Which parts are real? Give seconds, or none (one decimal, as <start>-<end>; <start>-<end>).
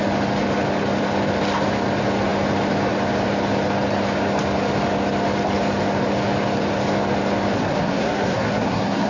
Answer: 0.0-7.5